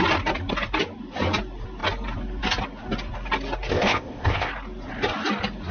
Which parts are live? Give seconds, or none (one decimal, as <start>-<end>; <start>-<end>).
0.0-3.7; 4.5-5.7